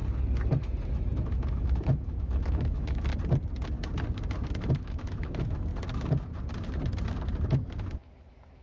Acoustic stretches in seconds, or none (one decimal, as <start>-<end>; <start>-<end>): 0.0-0.6; 3.1-4.7; 5.7-7.6